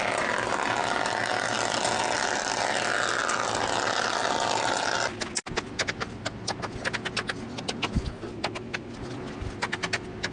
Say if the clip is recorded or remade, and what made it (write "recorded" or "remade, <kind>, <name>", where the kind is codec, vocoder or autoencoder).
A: recorded